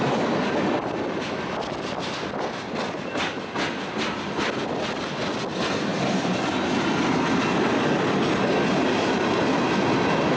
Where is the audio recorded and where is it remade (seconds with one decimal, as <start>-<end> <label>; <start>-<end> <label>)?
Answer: 0.0-10.4 recorded